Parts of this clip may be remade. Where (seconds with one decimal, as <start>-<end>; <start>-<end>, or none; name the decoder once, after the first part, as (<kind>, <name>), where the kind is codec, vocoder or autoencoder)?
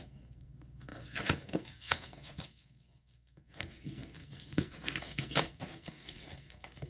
0.0-6.9 (codec, SNAC)